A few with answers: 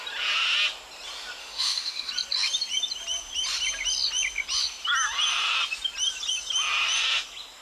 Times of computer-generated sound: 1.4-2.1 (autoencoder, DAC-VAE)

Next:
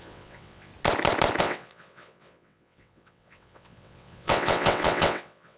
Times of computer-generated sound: 0.0-0.7 (vocoder, WaveNeXt); 1.4-5.6

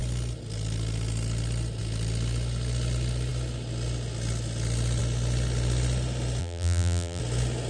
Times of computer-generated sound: 6.4-7.2 (vocoder, BigVGAN v2)